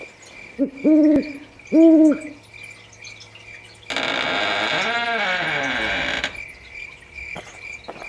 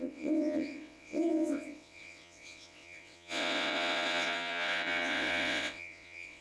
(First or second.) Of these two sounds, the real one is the first